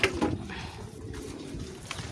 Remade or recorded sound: recorded